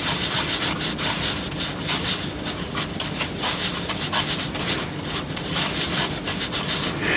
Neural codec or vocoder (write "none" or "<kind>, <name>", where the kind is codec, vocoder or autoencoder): none